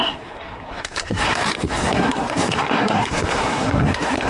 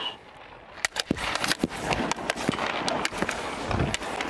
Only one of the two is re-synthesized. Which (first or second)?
first